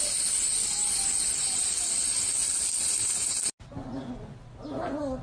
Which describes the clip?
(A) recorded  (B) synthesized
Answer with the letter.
A